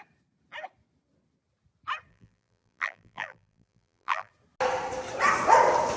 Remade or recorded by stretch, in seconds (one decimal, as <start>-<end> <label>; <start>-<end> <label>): 0.0-2.1 recorded; 2.1-4.3 remade; 4.3-6.0 recorded